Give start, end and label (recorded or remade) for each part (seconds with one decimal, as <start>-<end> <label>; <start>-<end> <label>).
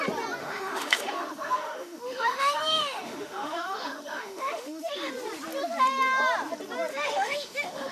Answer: 0.0-0.4 recorded; 0.4-5.1 remade; 5.1-6.9 recorded; 6.9-7.9 remade